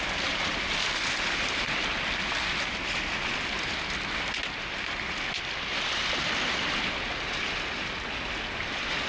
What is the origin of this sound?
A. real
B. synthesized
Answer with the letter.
A